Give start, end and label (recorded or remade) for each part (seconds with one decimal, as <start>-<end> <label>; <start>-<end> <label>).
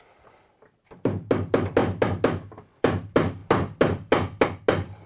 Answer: 0.0-5.1 recorded